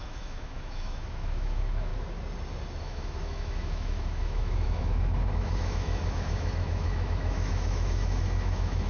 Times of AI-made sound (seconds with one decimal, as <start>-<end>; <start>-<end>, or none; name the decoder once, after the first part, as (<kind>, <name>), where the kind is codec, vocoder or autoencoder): 0.0-1.9 (autoencoder, DAC-VAE); 2.8-8.9